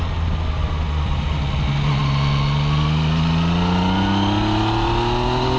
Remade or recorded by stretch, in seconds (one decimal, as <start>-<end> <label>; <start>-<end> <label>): 0.0-5.6 recorded